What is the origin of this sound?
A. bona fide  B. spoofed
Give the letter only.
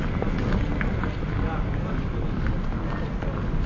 A